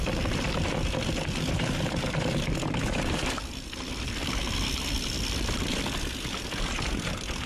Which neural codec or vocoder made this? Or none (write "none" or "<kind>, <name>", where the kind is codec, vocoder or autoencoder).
none